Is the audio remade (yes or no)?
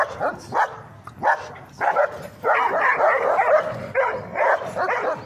no